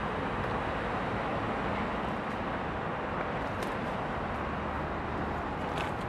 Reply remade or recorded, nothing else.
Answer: recorded